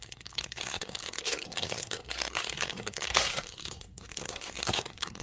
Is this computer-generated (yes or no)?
yes